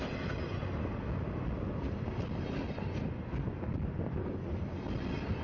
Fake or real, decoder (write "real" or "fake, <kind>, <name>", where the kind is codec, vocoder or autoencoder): real